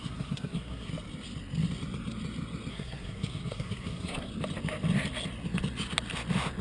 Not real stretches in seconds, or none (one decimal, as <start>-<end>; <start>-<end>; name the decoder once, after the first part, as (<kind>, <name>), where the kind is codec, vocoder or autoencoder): 0.0-0.9 (codec, SNAC); 2.7-4.3